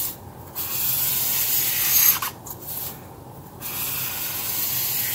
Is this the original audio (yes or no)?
yes